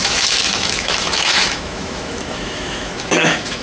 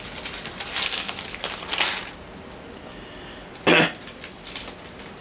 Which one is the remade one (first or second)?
first